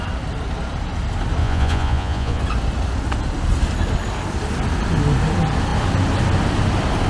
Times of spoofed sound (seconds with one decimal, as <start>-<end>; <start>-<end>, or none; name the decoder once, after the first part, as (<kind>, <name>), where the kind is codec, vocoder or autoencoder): 1.4-2.4 (vocoder, Vocos)